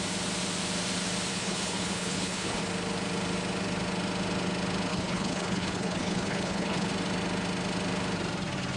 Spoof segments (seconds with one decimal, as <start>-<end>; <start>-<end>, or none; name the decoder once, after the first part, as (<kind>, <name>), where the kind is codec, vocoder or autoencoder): 1.3-2.6 (codec, HILCodec); 4.9-6.9